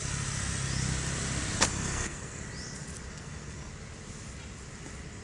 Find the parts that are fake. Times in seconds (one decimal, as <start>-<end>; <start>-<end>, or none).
1.7-2.4; 3.1-3.7